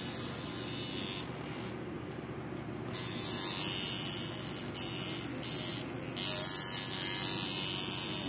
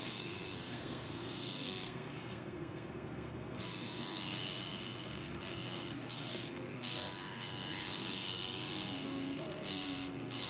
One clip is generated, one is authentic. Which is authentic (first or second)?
first